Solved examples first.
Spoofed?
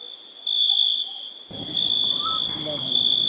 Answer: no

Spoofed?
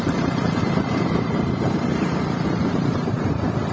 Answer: yes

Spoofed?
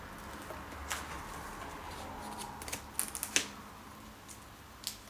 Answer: no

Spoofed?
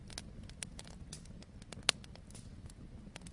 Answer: no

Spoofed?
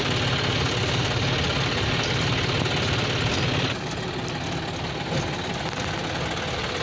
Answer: no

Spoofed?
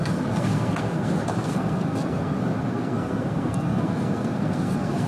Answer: yes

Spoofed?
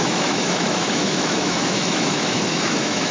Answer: yes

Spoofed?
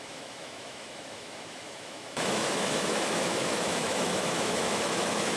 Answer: yes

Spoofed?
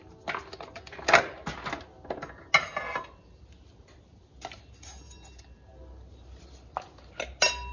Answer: no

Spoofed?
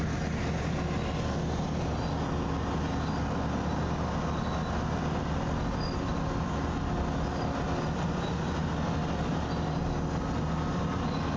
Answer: no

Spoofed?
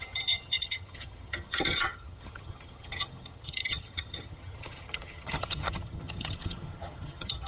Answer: yes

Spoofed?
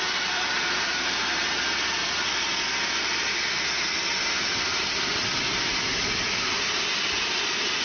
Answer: yes